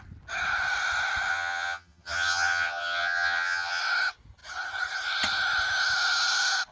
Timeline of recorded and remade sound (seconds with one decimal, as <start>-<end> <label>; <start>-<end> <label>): 0.0-1.3 recorded; 1.3-3.8 remade; 3.8-6.7 recorded